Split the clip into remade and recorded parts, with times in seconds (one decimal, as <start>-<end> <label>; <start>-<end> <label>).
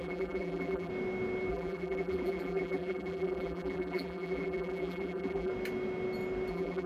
0.0-0.9 remade; 0.9-1.5 recorded; 1.5-5.5 remade; 5.5-6.5 recorded; 6.5-6.9 remade